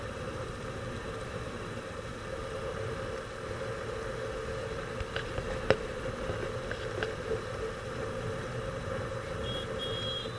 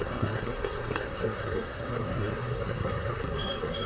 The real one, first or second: first